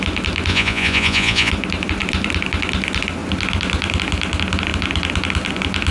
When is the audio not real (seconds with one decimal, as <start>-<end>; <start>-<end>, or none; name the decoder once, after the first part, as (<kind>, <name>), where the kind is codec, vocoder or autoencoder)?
0.5-1.5 (vocoder, Vocos)